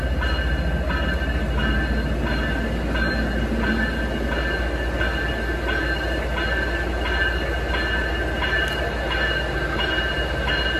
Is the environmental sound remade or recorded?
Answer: recorded